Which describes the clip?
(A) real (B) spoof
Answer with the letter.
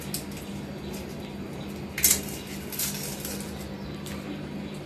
A